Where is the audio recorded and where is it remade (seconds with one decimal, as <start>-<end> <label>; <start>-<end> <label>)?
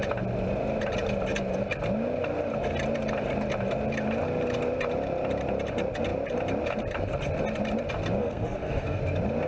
0.0-8.2 recorded; 8.2-9.0 remade; 9.0-9.5 recorded